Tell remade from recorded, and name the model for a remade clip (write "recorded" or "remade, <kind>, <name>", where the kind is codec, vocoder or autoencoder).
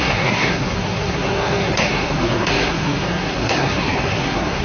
remade, codec, SNAC